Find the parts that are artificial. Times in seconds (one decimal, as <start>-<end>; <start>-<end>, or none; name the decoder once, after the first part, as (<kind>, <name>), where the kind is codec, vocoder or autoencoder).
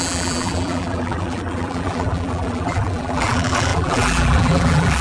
0.0-5.0 (vocoder, BigVGAN v2)